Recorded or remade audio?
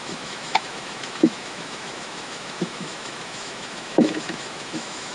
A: remade